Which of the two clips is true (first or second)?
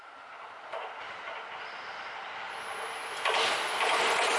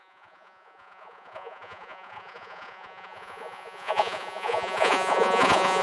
first